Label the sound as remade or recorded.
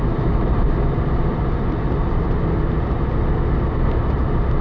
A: recorded